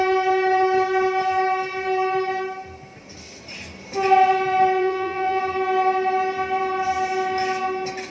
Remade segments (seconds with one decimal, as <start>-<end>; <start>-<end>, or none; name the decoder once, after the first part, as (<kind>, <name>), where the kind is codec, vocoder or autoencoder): 4.8-5.4 (vocoder, BigVGAN v2)